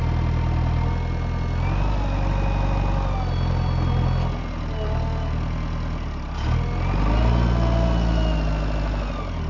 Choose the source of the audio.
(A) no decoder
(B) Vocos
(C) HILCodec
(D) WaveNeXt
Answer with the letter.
A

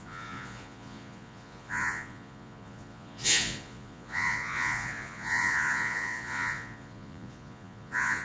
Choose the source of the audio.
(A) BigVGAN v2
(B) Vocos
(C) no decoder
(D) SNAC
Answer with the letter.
B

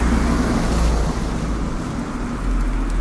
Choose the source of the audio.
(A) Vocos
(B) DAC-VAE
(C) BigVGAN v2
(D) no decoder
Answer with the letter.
D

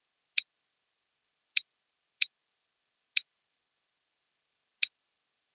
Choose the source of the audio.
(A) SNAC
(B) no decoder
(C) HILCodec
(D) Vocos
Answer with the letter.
B